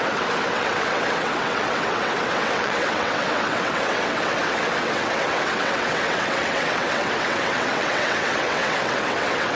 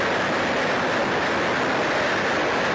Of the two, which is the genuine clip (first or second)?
second